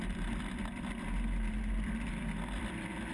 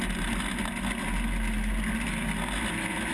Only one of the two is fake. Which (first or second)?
first